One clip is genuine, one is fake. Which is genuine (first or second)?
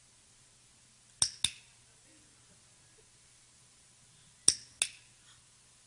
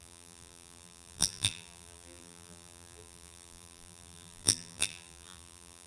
first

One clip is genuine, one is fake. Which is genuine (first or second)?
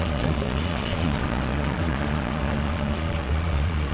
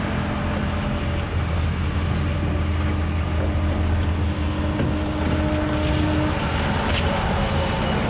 second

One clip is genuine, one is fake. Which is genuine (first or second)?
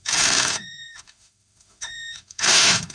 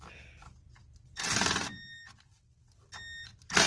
second